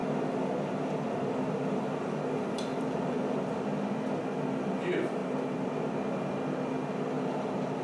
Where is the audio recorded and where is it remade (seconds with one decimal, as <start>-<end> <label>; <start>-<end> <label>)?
0.0-2.7 recorded; 2.7-3.4 remade; 3.4-5.2 recorded; 5.2-5.7 remade; 5.7-7.8 recorded